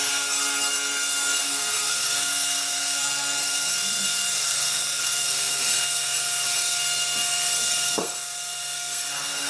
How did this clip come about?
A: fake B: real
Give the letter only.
A